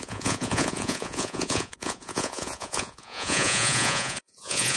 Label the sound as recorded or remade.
remade